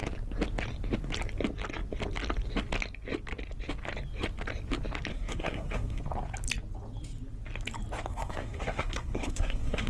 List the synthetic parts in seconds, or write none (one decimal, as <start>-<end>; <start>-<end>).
5.1-6.0; 8.1-9.9